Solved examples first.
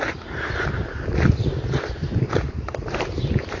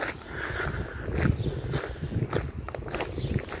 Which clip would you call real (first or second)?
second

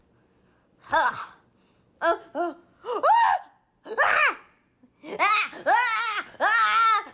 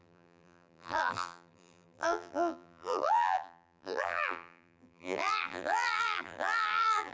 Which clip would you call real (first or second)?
first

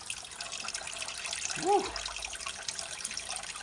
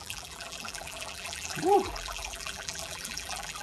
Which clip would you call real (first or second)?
first